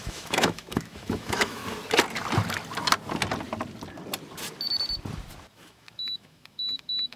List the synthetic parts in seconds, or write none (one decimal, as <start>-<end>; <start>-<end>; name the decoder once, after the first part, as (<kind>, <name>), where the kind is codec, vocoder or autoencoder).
0.0-1.6 (autoencoder, DAC-VAE); 5.5-7.2